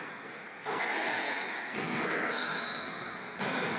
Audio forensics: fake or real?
fake